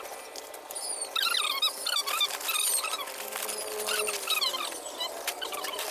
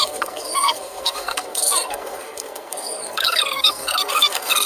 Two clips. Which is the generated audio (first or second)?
second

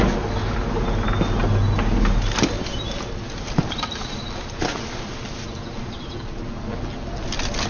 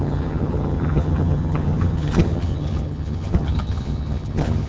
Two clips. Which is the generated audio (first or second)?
second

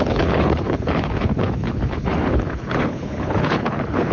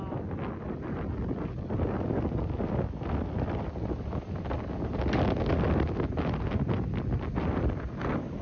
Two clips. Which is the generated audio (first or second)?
first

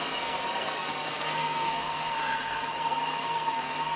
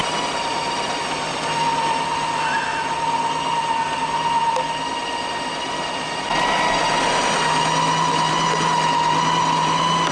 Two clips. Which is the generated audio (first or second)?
first